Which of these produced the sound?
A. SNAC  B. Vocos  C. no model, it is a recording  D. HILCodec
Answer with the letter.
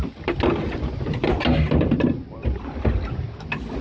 C